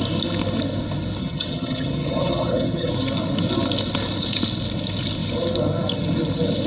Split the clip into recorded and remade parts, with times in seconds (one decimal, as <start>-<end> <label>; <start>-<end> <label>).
0.0-1.2 recorded; 1.2-2.9 remade; 2.9-6.7 recorded